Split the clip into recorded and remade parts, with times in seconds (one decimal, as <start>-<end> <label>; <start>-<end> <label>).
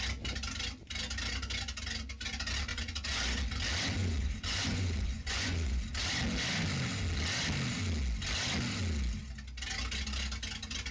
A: 0.0-2.7 recorded; 2.7-3.4 remade; 3.4-4.0 recorded; 4.0-5.8 remade; 5.8-10.9 recorded